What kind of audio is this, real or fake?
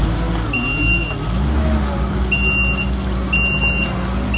real